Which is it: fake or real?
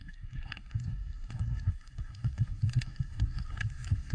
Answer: fake